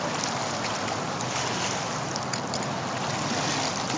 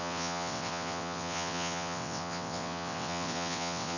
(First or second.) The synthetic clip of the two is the second